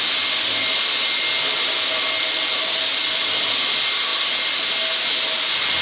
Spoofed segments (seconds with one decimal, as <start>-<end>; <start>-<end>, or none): none